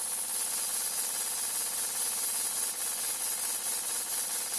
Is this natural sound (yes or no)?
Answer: yes